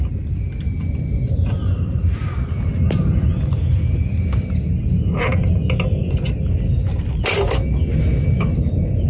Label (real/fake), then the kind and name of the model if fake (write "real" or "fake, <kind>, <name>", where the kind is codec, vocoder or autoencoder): real